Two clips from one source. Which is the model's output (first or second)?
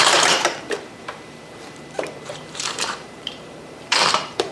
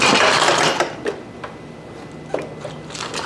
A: first